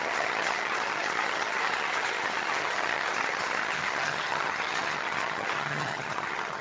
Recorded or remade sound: remade